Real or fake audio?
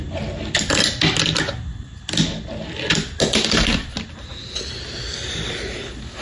real